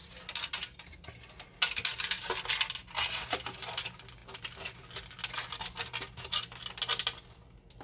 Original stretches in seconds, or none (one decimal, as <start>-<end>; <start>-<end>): 0.0-7.8